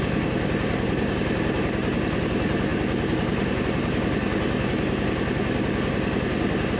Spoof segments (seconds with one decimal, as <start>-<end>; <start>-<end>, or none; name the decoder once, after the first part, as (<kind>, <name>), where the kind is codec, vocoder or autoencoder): none